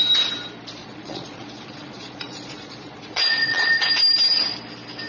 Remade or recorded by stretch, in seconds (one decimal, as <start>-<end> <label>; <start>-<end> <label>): 0.0-0.8 recorded; 0.8-3.9 remade; 3.9-5.1 recorded